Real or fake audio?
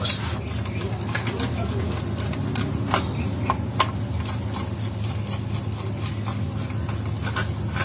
real